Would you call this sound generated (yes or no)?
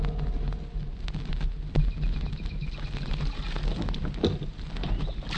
no